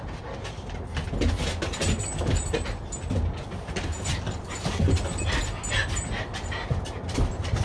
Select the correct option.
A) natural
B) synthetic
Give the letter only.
A